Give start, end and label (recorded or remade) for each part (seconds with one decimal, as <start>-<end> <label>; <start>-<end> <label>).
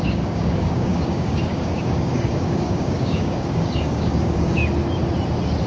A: 0.0-4.6 remade; 4.6-5.7 recorded